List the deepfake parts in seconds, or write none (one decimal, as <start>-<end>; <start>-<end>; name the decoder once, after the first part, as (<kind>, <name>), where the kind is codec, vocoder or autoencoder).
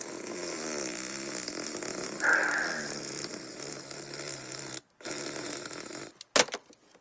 none